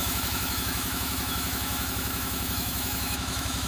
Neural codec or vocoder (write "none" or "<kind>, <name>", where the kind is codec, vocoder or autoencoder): autoencoder, DAC-VAE